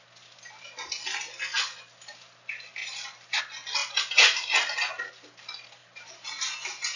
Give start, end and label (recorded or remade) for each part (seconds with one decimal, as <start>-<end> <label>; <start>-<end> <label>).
0.0-2.8 recorded; 2.8-3.4 remade; 3.4-3.8 recorded; 3.8-5.1 remade; 5.1-5.8 recorded; 5.8-7.0 remade